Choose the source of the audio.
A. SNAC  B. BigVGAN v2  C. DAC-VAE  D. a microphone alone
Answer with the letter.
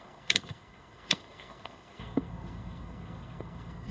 A